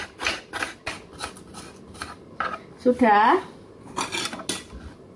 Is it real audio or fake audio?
real